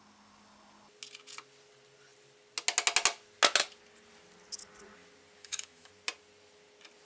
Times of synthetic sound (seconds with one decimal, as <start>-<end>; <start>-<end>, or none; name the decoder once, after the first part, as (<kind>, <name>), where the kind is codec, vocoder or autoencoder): 5.4-5.9 (autoencoder, DAC-VAE)